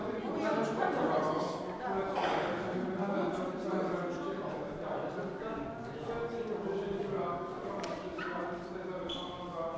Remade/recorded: recorded